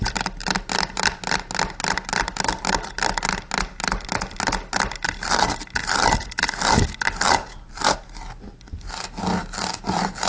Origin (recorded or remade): recorded